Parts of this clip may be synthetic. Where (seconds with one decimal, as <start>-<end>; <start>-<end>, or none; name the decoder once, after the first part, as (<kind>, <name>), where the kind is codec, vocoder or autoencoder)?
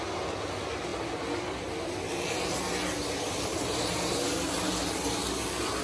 none